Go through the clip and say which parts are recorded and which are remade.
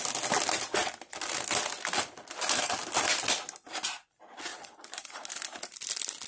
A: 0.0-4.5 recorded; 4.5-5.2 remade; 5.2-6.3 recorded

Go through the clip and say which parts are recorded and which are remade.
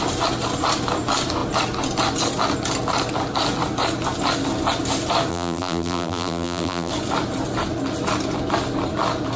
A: 0.0-5.3 recorded; 5.3-6.9 remade; 6.9-9.4 recorded